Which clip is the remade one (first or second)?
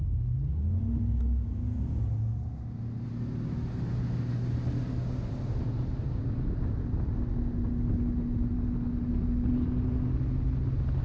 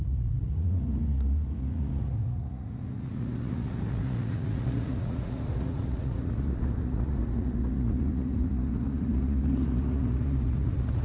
second